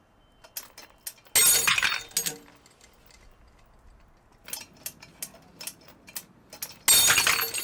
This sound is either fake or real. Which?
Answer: real